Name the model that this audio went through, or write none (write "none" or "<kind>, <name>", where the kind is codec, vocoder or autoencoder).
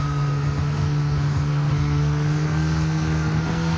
codec, SNAC